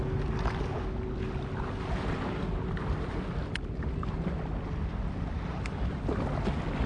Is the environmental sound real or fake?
real